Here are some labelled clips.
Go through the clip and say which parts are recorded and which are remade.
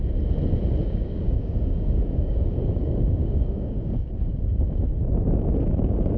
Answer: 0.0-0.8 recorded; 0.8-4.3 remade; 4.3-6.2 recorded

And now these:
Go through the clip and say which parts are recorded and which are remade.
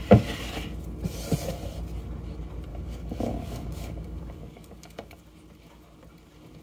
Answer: 0.0-2.7 recorded; 2.7-5.2 remade; 5.2-6.6 recorded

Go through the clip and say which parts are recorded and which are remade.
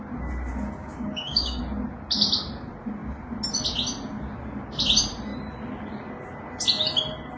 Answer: 0.0-0.8 recorded; 0.8-1.6 remade; 1.6-7.4 recorded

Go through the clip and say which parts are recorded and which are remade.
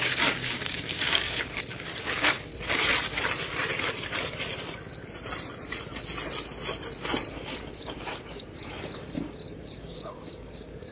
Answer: 0.0-2.5 remade; 2.5-7.3 recorded; 7.3-10.9 remade